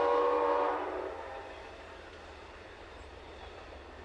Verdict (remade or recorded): remade